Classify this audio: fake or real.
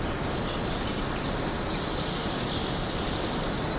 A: real